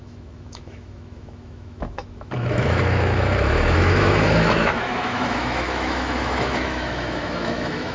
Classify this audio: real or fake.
fake